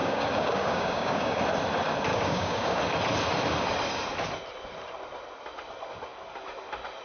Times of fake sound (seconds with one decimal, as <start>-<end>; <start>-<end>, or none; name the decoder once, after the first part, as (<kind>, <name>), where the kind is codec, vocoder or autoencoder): 0.0-1.4 (codec, DAC); 2.1-2.8